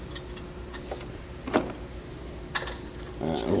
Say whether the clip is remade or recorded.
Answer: recorded